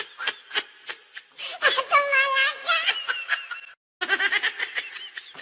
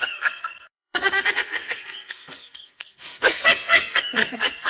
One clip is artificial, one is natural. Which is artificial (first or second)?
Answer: second